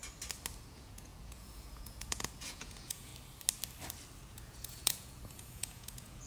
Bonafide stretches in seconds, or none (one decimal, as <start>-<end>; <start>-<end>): 0.0-0.7; 3.1-4.3